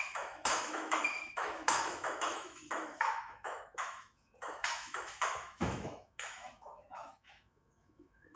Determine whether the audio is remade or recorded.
remade